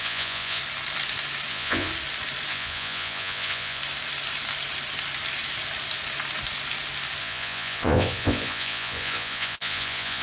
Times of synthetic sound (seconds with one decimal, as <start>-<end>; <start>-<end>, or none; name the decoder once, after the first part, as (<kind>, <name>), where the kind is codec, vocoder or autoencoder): 0.0-0.6 (vocoder, Vocos); 1.5-1.9; 2.5-3.8; 7.2-10.2